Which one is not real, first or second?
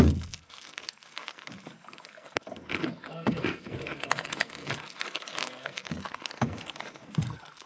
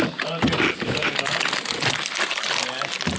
first